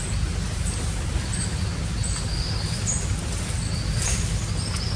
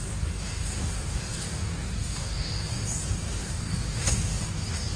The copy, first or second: second